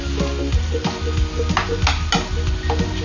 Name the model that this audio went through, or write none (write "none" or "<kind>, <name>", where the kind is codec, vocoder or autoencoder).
none